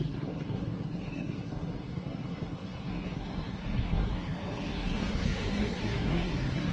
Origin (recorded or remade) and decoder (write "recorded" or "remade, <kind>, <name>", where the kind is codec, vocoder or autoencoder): remade, codec, SNAC